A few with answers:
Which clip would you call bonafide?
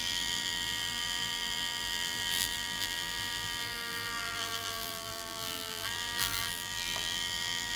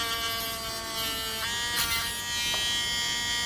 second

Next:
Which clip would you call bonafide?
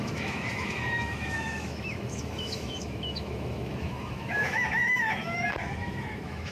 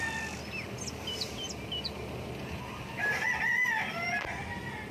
second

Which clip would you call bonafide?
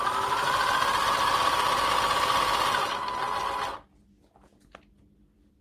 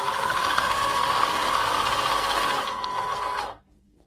first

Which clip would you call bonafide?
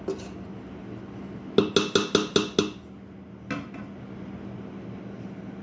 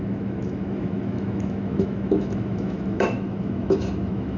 first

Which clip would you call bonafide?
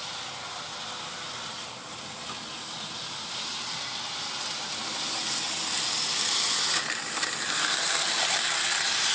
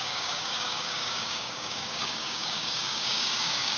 first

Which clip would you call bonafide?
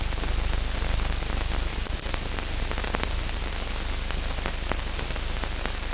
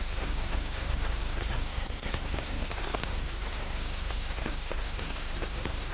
first